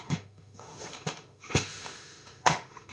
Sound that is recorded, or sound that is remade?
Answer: remade